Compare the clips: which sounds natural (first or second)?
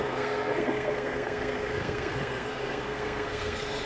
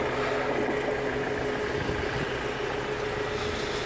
second